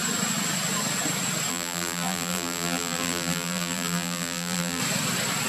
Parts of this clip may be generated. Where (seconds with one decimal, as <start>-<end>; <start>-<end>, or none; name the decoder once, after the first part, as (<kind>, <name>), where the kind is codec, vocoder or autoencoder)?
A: 1.5-4.8 (vocoder, BigVGAN v2)